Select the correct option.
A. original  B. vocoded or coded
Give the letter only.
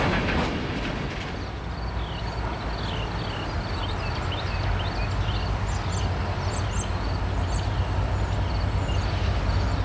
A